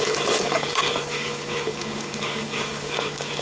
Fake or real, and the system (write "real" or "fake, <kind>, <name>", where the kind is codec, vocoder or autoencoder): fake, codec, DAC